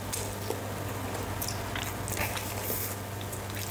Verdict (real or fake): real